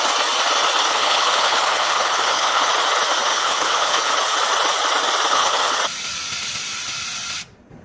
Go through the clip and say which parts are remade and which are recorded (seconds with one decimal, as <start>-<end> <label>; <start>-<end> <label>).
0.0-0.9 recorded; 0.9-2.7 remade; 2.7-3.3 recorded; 3.3-4.1 remade; 4.1-5.3 recorded; 5.3-5.8 remade; 5.8-7.8 recorded